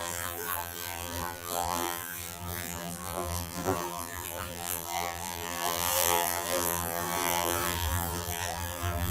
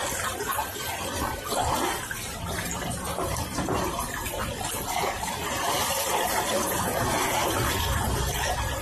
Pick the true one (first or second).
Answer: second